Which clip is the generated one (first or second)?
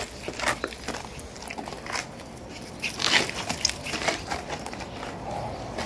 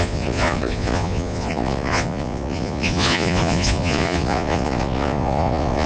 second